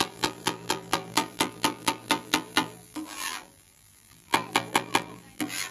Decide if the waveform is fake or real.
fake